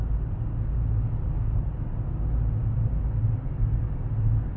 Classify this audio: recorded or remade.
recorded